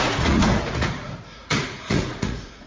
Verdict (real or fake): fake